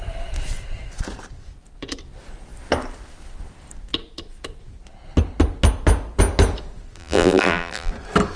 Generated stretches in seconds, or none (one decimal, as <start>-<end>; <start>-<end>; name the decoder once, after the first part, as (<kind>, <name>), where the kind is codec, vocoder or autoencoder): 7.0-7.9 (vocoder, BigVGAN v2)